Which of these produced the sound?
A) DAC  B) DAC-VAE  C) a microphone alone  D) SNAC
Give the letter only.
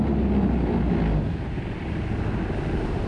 C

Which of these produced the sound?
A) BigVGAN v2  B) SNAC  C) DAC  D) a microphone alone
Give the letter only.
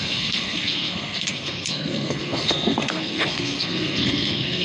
B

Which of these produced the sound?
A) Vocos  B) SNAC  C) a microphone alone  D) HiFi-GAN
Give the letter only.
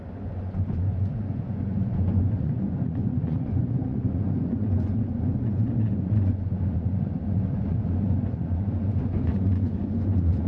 A